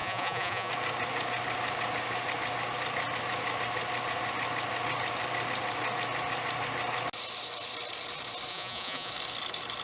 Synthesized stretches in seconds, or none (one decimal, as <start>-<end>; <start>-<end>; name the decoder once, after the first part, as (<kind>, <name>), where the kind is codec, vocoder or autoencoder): 0.0-0.7 (vocoder, Vocos); 8.5-9.1